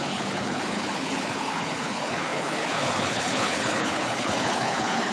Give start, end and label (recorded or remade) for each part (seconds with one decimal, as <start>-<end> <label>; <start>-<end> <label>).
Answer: 0.0-5.1 remade